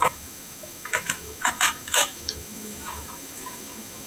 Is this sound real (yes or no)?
no